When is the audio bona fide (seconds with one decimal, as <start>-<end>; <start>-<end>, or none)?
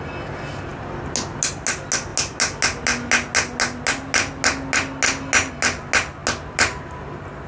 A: 0.0-7.5